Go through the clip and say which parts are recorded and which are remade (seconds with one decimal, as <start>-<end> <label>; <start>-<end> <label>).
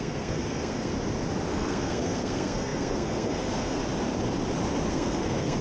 0.0-0.9 remade; 0.9-1.5 recorded; 1.5-3.8 remade; 3.8-4.9 recorded; 4.9-5.6 remade